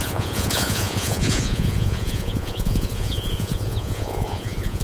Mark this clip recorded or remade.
remade